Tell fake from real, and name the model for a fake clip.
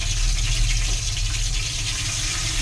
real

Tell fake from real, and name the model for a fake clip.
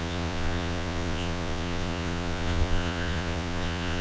fake, vocoder, Vocos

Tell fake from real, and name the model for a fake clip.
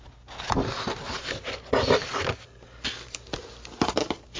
real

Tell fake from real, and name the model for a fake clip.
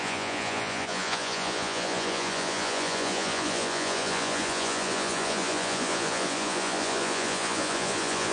fake, vocoder, Vocos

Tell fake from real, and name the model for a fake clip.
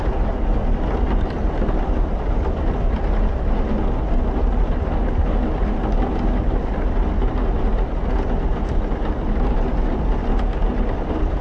real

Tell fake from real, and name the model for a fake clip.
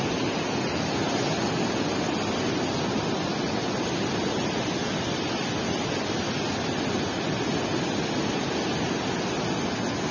real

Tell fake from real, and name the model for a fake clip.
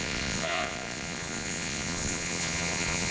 fake, vocoder, Vocos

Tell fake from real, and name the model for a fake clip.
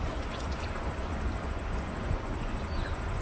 fake, vocoder, Vocos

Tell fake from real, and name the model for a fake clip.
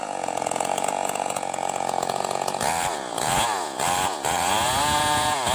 fake, vocoder, Vocos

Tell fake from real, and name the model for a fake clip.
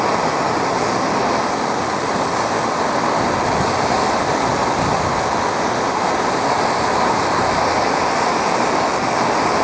real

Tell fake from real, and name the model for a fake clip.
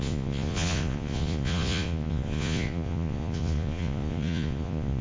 fake, vocoder, Vocos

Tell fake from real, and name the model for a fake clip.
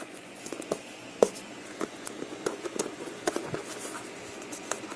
fake, vocoder, Vocos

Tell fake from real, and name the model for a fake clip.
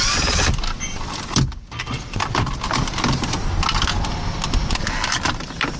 real